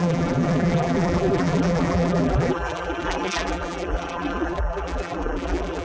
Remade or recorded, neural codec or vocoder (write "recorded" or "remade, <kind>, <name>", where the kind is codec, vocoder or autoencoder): remade, vocoder, BigVGAN v2